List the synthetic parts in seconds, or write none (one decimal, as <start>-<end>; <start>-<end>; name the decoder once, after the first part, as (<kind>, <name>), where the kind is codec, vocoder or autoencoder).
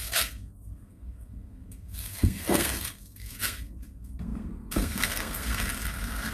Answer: 0.0-6.3 (codec, SNAC)